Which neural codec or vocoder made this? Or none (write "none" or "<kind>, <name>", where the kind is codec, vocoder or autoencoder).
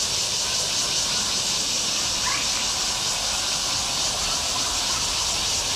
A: none